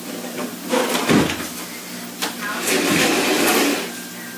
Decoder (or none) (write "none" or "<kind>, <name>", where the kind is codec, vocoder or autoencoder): none